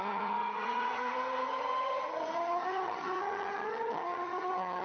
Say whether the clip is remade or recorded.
remade